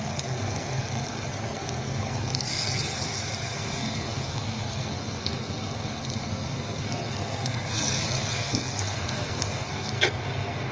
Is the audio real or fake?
fake